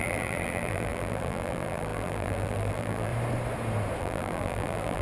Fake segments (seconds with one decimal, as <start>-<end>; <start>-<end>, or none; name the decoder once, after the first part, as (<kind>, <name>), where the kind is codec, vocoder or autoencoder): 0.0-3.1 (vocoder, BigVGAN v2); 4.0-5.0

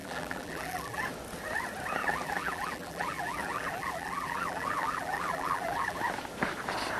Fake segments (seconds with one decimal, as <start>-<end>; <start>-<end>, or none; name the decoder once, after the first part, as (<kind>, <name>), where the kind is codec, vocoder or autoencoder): 0.0-1.0 (vocoder, BigVGAN v2); 2.0-6.0

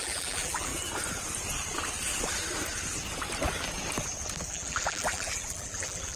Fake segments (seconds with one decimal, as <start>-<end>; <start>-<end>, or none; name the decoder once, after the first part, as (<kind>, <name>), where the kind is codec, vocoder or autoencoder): 0.0-0.7 (vocoder, BigVGAN v2); 4.4-6.2

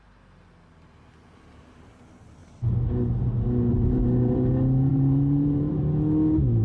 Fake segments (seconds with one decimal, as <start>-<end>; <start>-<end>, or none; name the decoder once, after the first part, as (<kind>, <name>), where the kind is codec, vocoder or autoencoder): 3.7-4.5 (vocoder, BigVGAN v2); 4.9-5.8